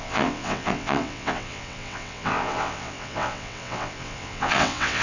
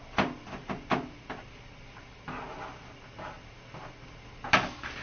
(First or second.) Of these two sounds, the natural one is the second